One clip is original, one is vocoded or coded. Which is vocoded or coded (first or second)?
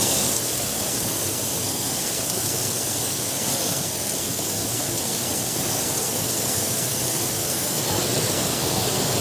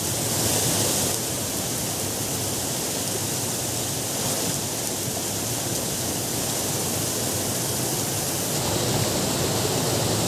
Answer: first